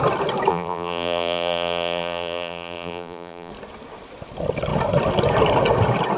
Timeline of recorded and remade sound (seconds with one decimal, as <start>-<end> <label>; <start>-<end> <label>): 0.0-0.5 recorded; 0.5-3.5 remade; 3.5-6.2 recorded